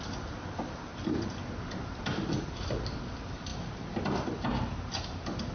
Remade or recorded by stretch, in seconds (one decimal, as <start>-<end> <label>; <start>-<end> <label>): 0.0-5.5 recorded